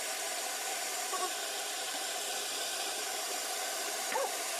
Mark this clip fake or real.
fake